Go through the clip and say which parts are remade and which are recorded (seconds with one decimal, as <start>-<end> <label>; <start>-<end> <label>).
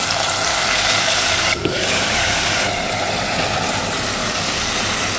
0.0-0.5 recorded; 0.5-2.6 remade; 2.6-4.2 recorded; 4.2-4.7 remade; 4.7-5.2 recorded